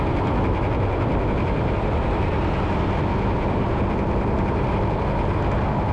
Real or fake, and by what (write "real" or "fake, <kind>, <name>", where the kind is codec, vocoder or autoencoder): real